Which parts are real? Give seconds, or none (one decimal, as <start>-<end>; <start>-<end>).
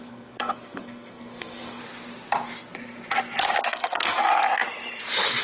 1.8-3.7; 4.2-5.4